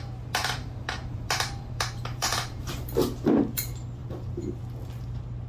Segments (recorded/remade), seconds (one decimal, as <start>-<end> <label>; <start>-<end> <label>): 0.0-0.4 recorded; 0.4-2.8 remade; 2.8-4.0 recorded; 4.0-4.6 remade; 4.6-5.5 recorded